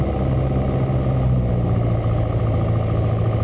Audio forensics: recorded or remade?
recorded